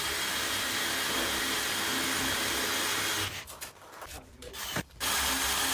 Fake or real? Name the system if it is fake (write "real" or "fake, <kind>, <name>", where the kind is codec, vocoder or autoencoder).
real